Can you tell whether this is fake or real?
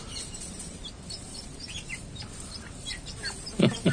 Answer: fake